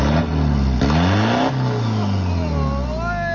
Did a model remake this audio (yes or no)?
no